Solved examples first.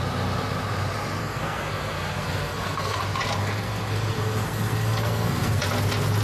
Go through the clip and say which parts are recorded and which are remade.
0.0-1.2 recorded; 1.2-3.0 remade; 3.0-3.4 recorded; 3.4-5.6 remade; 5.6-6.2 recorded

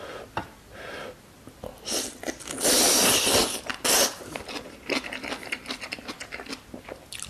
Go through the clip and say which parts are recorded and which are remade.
0.0-7.3 recorded

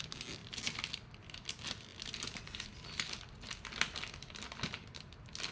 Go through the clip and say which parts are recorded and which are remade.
0.0-5.5 recorded

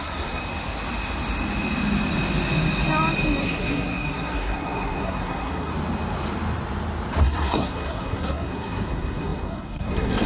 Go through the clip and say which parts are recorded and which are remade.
0.0-0.4 remade; 0.4-3.4 recorded; 3.4-5.7 remade; 5.7-7.2 recorded; 7.2-10.3 remade

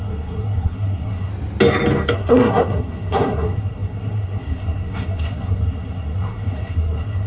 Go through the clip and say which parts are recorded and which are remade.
0.0-1.3 remade; 1.3-2.1 recorded; 2.1-7.3 remade

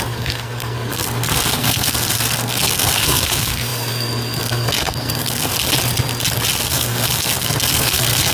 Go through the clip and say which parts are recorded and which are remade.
0.0-5.5 remade; 5.5-6.6 recorded; 6.6-8.3 remade